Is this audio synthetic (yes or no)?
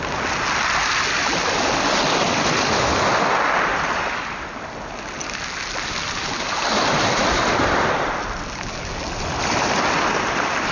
no